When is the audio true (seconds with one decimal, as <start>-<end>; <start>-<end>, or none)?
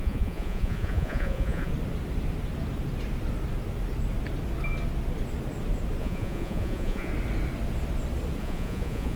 1.7-6.0; 7.1-8.4